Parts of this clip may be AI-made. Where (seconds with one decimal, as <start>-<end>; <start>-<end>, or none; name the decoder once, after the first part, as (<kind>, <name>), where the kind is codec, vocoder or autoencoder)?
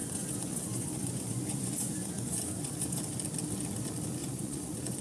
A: 0.0-3.0 (vocoder, Vocos); 4.2-5.0